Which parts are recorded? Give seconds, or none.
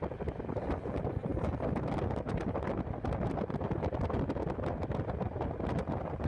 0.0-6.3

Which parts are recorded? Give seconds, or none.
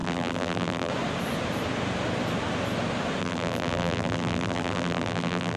0.9-3.2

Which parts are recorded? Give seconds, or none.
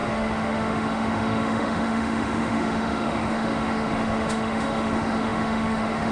none